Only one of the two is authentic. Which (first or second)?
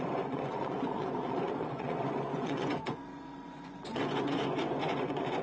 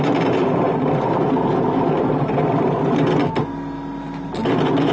second